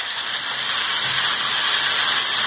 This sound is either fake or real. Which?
real